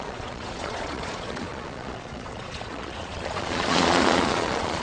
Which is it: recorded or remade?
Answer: remade